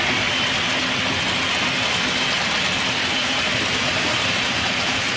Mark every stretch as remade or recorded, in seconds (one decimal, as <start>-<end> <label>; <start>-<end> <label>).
0.0-3.5 recorded; 3.5-5.2 remade

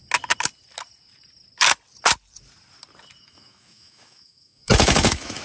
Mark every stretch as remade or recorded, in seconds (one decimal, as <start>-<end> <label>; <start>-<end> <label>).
0.0-3.2 recorded; 3.2-5.4 remade

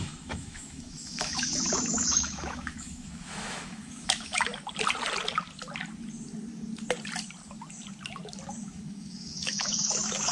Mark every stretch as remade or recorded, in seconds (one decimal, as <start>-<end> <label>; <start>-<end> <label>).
0.0-4.5 remade; 4.5-8.6 recorded; 8.6-10.3 remade

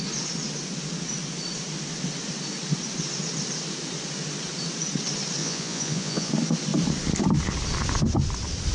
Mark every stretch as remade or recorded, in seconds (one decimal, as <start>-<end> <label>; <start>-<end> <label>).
0.0-5.4 recorded; 5.4-6.3 remade; 6.3-8.7 recorded

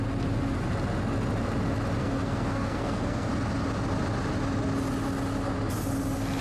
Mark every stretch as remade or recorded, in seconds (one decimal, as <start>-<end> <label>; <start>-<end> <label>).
0.0-2.0 recorded; 2.0-3.3 remade; 3.3-6.4 recorded

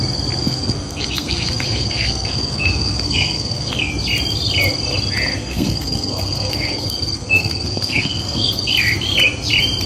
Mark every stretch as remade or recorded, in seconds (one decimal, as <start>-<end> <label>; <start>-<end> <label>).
0.0-0.4 recorded; 0.4-3.9 remade; 3.9-5.4 recorded; 5.4-8.7 remade; 8.7-9.9 recorded

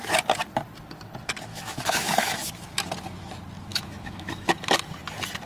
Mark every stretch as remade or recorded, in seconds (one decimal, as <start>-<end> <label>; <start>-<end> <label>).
0.0-1.5 recorded; 1.5-2.5 remade; 2.5-3.7 recorded; 3.7-4.5 remade; 4.5-5.5 recorded

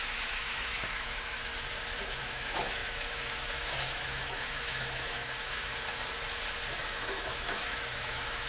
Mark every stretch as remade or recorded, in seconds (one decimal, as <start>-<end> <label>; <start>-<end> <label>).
0.0-1.5 remade; 1.5-2.2 recorded; 2.2-5.7 remade; 5.7-6.7 recorded; 6.7-8.5 remade